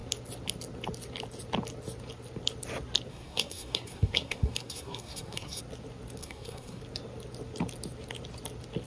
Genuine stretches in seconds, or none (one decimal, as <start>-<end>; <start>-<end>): 0.0-3.1; 5.6-6.2; 6.8-8.9